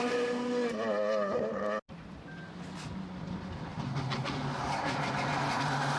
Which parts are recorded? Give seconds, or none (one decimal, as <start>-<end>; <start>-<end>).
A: 0.0-6.0